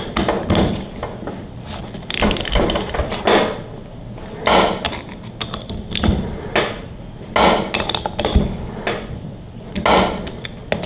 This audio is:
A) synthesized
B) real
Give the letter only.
B